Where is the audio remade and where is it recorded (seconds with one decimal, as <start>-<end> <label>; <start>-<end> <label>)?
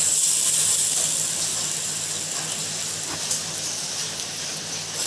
0.0-5.1 recorded